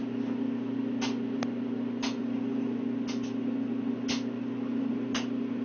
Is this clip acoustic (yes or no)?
yes